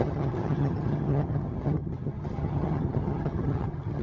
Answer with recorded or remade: remade